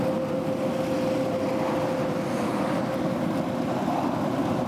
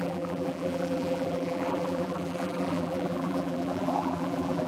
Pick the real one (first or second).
first